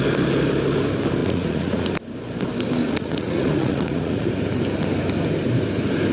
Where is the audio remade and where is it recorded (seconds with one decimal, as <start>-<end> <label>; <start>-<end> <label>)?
0.0-1.2 recorded; 1.2-1.9 remade; 1.9-2.8 recorded; 2.8-4.3 remade; 4.3-6.1 recorded